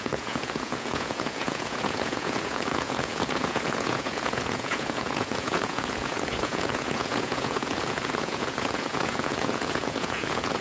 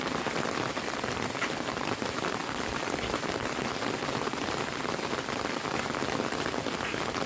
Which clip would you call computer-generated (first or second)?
first